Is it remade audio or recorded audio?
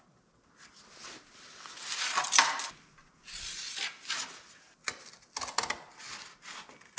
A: recorded